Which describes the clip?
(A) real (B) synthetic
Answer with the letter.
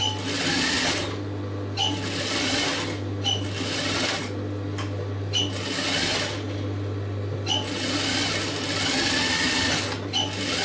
A